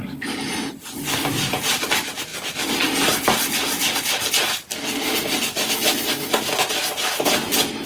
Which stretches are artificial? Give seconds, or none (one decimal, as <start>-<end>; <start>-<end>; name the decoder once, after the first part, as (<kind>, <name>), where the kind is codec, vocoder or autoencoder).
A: none